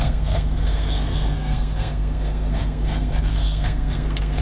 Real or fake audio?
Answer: fake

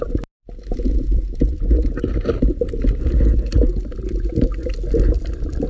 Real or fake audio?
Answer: real